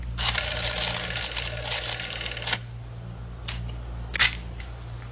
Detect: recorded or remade recorded